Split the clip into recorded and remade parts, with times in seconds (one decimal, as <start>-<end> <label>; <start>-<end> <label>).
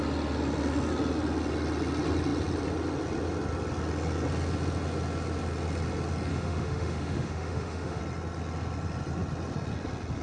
0.0-6.3 recorded; 6.3-8.0 remade; 8.0-10.2 recorded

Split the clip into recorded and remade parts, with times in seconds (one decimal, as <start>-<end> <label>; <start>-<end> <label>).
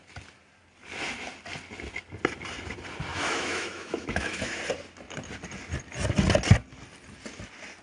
0.0-3.1 recorded; 3.1-4.6 remade; 4.6-7.8 recorded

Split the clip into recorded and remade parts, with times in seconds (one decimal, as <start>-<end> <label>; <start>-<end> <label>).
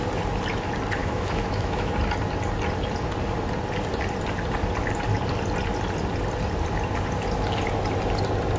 0.0-1.0 recorded; 1.0-1.9 remade; 1.9-8.6 recorded